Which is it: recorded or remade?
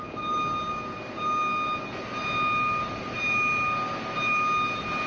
recorded